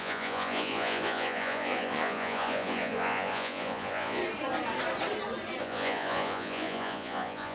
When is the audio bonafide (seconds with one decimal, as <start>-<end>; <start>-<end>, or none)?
4.2-5.6